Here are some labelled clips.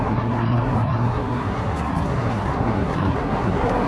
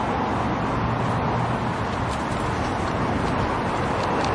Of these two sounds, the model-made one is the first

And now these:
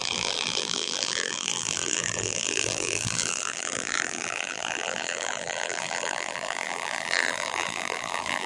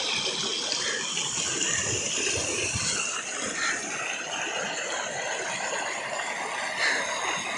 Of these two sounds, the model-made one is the first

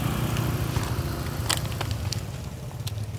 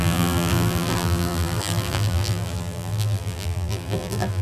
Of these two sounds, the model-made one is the second